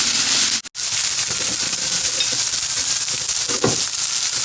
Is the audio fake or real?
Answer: real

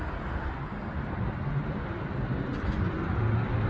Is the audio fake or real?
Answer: real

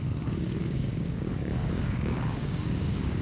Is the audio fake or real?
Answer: fake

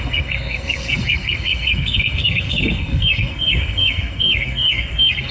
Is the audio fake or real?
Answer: fake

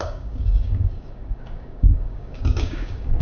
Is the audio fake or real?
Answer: fake